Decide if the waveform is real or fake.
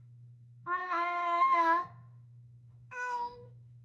fake